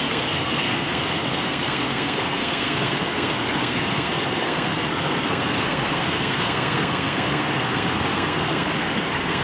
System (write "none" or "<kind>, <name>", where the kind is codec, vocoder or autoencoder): codec, SNAC